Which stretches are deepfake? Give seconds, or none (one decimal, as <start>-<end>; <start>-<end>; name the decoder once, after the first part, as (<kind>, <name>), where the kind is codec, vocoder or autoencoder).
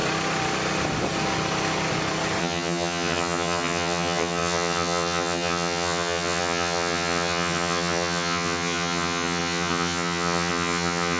2.4-11.2 (vocoder, HiFi-GAN)